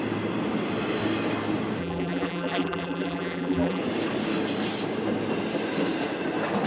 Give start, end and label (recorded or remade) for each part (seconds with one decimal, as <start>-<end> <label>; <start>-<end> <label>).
0.0-1.8 recorded; 1.8-3.8 remade; 3.8-6.7 recorded